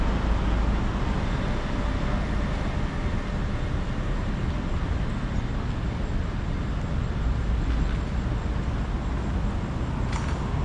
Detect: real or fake real